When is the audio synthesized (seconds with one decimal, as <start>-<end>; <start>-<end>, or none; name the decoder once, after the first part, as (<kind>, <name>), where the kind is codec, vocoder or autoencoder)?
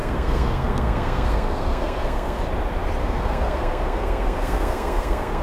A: 0.0-2.4 (codec, SNAC); 3.0-5.4